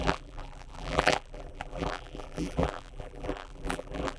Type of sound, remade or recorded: remade